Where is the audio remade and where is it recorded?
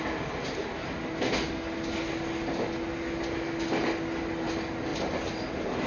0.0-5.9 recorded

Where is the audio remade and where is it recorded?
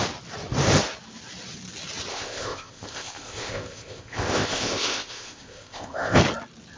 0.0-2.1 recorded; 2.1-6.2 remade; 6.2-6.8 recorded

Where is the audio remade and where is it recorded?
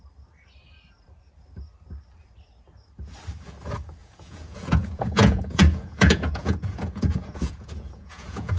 0.0-4.0 recorded; 4.0-8.6 remade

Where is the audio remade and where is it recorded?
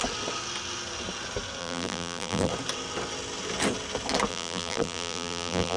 0.0-1.6 recorded; 1.6-2.5 remade; 2.5-4.3 recorded; 4.3-5.8 remade